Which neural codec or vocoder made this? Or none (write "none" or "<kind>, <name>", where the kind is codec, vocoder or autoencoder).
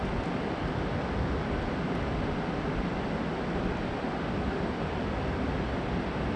none